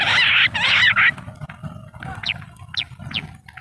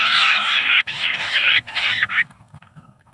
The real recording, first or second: first